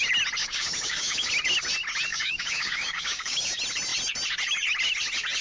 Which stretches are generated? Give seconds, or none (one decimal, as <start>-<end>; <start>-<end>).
0.4-1.3; 2.1-3.4